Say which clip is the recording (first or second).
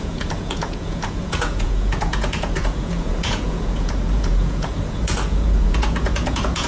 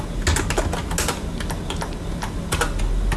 second